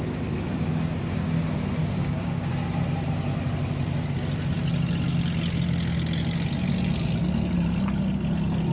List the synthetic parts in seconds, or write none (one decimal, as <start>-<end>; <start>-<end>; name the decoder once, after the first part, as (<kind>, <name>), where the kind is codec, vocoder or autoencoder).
1.8-2.5 (codec, DAC)